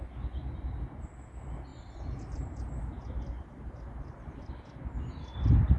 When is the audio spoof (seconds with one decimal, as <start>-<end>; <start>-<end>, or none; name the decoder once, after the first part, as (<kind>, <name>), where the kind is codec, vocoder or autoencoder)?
1.7-4.5 (vocoder, BigVGAN v2)